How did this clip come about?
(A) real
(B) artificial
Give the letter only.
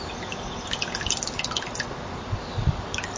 A